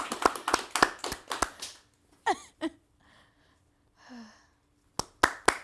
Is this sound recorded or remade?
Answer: recorded